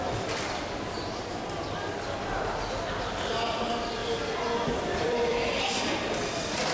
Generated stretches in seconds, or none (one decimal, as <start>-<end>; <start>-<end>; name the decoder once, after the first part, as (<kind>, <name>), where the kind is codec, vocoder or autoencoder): 0.0-1.9 (vocoder, BigVGAN v2); 4.0-5.5